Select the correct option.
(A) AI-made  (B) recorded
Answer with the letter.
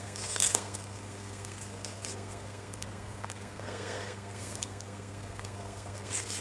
A